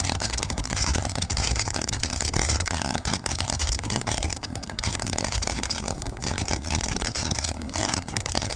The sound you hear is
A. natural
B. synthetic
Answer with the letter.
B